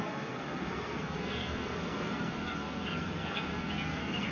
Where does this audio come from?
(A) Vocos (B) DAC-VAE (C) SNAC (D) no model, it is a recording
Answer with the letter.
C